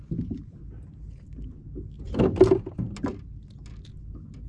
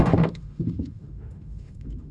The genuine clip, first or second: first